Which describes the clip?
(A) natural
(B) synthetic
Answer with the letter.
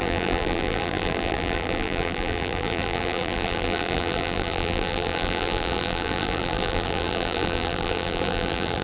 B